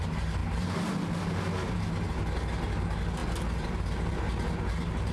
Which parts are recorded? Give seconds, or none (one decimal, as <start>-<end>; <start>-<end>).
0.0-5.1